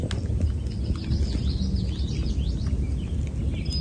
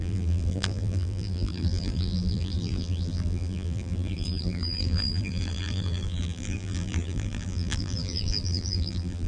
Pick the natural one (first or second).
first